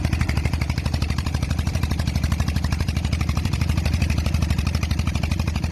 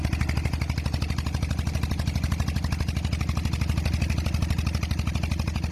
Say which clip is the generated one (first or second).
first